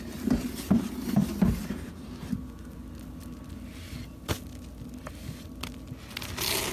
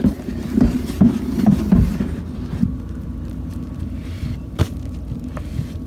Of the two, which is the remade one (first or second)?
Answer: second